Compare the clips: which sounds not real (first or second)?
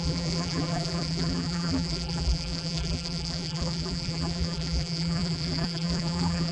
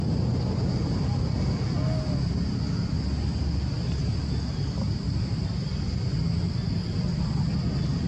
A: first